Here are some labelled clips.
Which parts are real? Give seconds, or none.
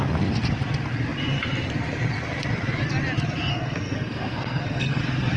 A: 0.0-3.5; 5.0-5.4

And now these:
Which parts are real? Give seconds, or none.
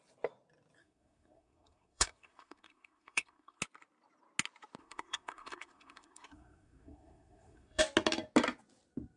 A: 0.0-0.8; 3.6-4.8; 7.8-9.2